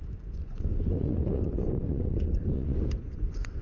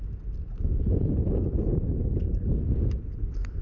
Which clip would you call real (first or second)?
second